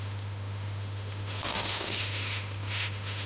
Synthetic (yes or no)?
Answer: yes